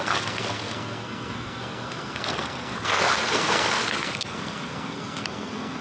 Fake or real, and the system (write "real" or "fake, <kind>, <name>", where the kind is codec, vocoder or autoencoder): fake, codec, SNAC